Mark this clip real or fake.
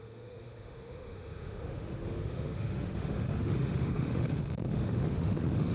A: fake